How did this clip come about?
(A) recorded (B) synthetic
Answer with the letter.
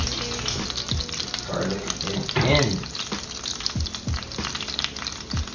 A